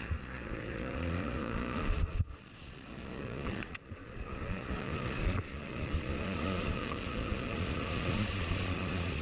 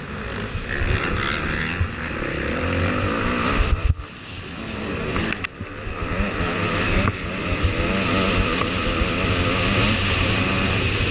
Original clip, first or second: second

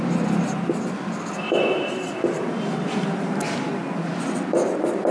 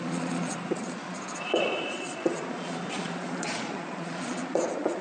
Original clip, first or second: first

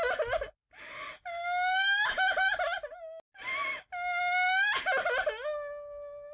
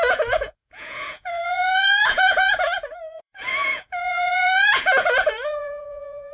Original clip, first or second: first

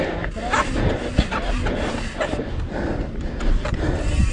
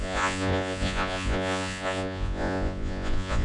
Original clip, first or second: first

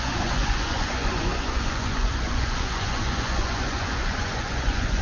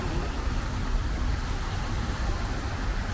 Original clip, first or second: second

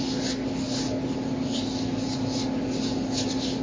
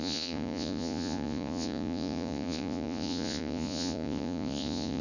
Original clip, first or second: first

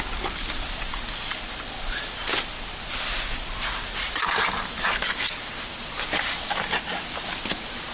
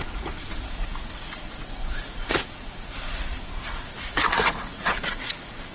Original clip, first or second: first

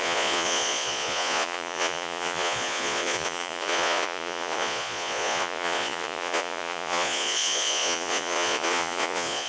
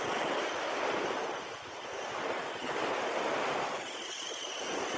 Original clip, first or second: second